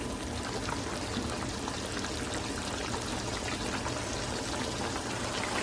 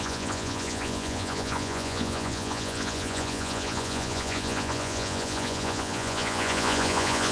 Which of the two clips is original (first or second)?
first